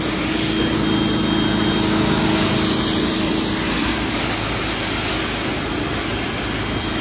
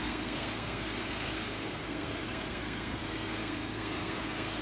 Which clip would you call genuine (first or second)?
first